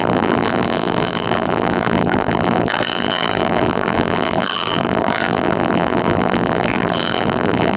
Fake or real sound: fake